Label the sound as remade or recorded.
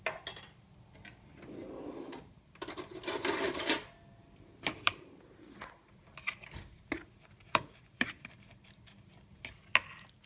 recorded